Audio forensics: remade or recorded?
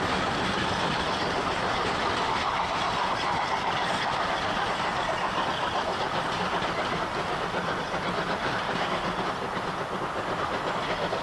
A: recorded